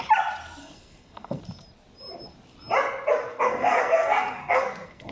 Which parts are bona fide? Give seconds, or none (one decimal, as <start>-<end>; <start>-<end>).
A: 0.0-0.6; 1.4-3.3